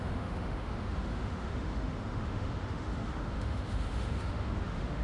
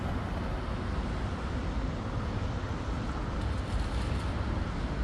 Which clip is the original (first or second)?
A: second